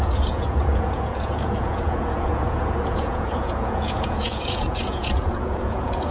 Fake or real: fake